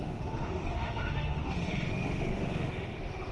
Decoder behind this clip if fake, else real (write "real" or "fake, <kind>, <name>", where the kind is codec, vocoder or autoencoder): fake, autoencoder, DAC-VAE